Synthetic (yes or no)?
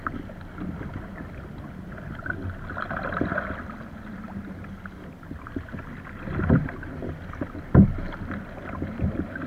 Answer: no